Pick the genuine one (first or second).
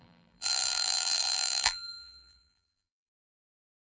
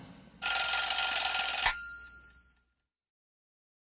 second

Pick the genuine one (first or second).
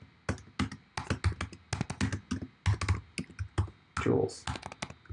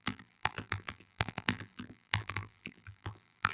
first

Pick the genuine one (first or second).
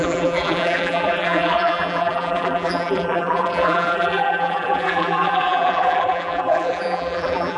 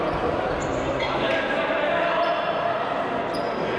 second